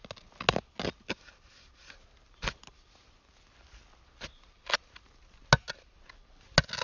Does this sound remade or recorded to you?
recorded